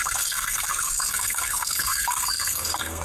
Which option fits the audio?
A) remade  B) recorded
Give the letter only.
A